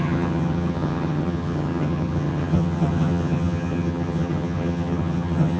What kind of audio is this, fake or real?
fake